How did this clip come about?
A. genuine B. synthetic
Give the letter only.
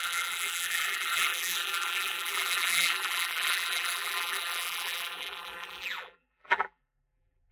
B